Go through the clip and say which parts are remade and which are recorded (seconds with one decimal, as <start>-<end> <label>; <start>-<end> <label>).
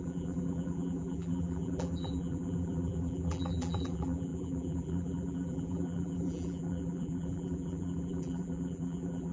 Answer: 0.0-9.3 remade